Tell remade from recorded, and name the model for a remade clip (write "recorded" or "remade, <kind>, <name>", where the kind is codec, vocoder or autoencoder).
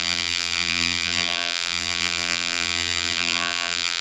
remade, vocoder, BigVGAN v2